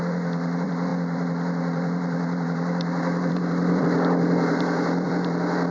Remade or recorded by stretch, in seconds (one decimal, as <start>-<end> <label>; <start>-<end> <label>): 0.0-5.7 remade